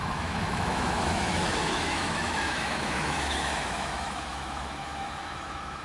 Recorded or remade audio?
remade